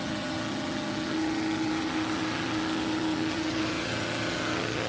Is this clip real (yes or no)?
no